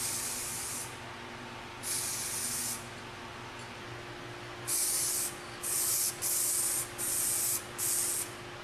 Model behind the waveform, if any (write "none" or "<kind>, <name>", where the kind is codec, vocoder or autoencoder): none